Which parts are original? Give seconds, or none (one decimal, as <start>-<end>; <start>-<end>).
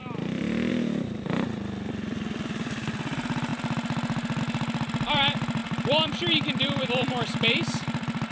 3.5-4.4